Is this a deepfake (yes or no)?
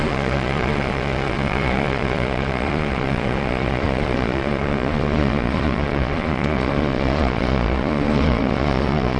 yes